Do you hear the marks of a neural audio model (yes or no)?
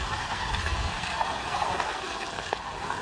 yes